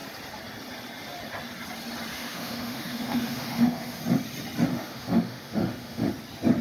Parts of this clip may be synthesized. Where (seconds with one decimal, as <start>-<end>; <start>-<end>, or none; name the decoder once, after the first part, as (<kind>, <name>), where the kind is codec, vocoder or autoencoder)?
2.1-4.0 (autoencoder, DAC-VAE); 4.7-6.1